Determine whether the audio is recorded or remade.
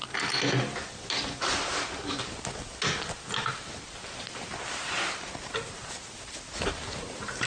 recorded